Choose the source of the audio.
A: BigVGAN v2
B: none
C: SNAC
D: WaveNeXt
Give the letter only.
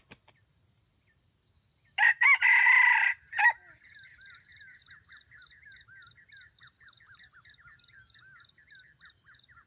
B